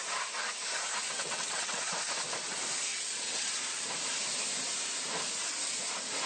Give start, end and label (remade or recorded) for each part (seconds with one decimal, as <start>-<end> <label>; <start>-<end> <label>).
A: 0.0-1.0 recorded; 1.0-1.8 remade; 1.8-2.9 recorded; 2.9-3.5 remade; 3.5-6.3 recorded